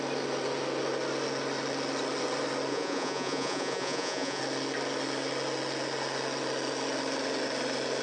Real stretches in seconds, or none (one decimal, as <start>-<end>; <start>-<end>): 0.0-2.7; 4.4-8.0